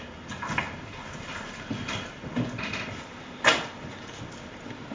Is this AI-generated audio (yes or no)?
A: no